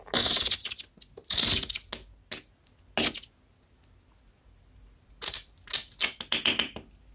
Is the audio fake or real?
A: real